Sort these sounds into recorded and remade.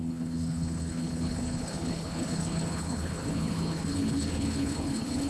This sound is remade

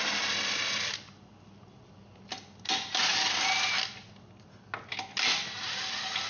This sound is recorded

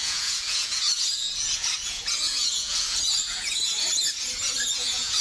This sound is remade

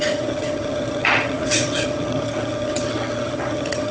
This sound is remade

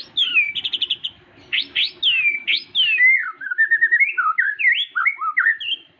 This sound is recorded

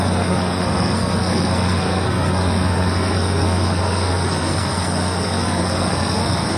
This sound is remade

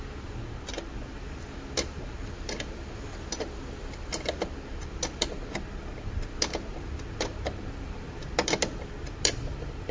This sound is remade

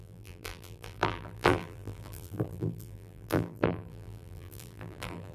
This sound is remade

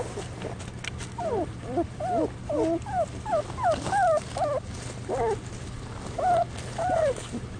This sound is recorded